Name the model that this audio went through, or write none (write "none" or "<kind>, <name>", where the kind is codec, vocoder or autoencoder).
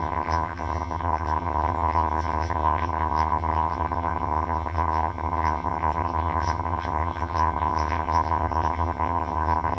vocoder, HiFi-GAN